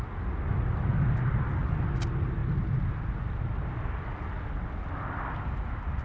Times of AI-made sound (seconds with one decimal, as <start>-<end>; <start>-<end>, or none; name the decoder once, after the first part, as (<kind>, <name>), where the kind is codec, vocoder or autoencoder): none